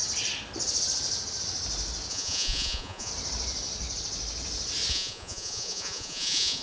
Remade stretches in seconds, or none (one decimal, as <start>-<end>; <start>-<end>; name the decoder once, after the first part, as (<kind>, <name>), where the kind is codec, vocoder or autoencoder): 2.1-3.1 (vocoder, Vocos); 4.9-6.6